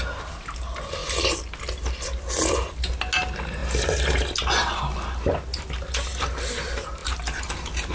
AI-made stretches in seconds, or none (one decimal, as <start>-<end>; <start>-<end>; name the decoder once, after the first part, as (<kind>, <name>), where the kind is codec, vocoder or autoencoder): none